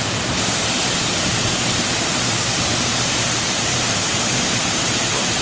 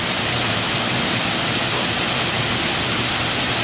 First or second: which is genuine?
second